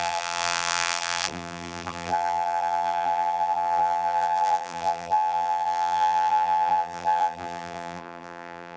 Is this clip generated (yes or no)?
yes